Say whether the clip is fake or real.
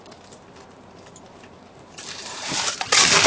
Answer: fake